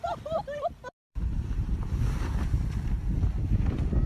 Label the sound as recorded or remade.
recorded